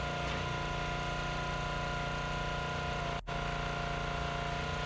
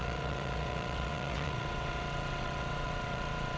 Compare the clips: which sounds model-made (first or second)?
second